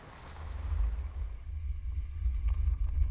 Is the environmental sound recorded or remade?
recorded